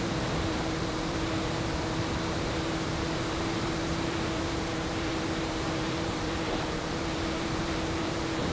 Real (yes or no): no